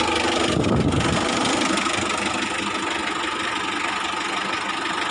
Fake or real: real